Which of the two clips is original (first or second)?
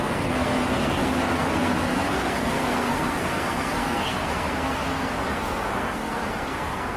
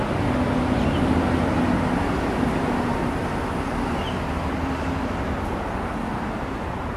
second